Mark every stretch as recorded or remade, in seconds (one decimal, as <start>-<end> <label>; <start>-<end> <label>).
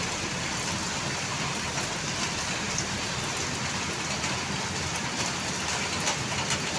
0.0-6.8 recorded